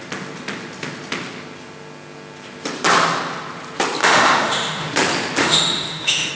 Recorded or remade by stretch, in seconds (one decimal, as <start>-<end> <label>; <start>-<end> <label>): 0.0-4.0 recorded; 4.0-4.9 remade; 4.9-5.4 recorded; 5.4-6.3 remade